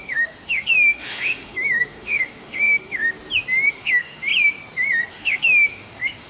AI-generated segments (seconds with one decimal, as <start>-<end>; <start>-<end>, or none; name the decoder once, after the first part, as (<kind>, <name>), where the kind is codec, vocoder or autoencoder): 0.0-3.0 (autoencoder, DAC-VAE); 3.7-4.3; 5.1-6.3